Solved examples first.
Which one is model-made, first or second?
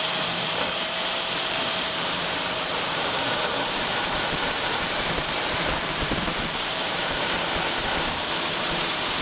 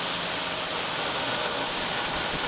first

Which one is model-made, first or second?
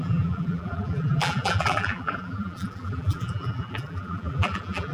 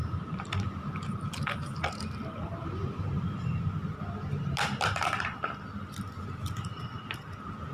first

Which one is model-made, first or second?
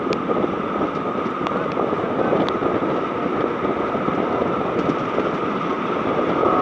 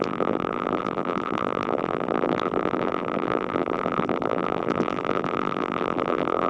second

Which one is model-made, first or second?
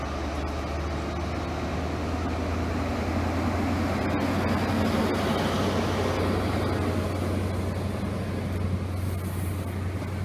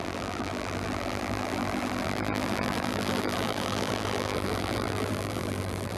second